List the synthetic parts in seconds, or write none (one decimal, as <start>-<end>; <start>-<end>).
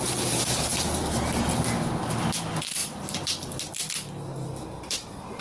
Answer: 0.7-1.4; 2.8-3.7; 4.3-5.4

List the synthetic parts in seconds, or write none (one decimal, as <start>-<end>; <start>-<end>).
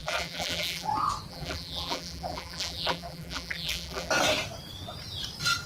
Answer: 0.0-0.9; 1.3-4.1